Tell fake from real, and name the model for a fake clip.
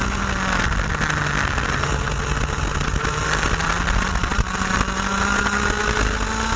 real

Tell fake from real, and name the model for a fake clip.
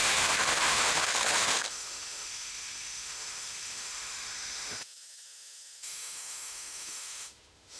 fake, autoencoder, DAC-VAE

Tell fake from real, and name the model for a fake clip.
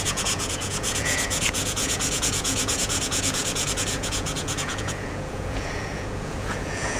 fake, vocoder, Vocos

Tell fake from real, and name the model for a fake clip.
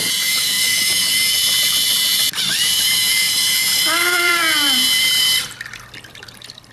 fake, vocoder, BigVGAN v2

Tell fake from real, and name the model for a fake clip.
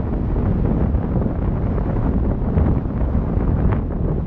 real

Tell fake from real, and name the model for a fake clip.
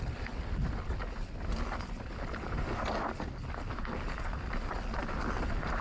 real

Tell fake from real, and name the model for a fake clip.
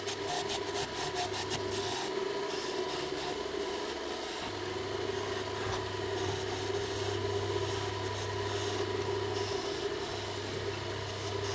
real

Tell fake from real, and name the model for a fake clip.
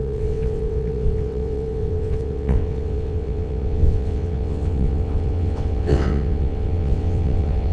fake, vocoder, WaveNeXt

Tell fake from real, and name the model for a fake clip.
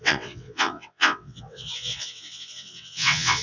fake, vocoder, WaveNeXt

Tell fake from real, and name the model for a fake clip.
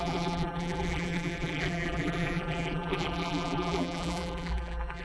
fake, vocoder, BigVGAN v2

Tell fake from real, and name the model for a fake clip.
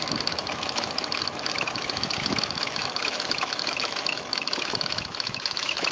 fake, autoencoder, DAC-VAE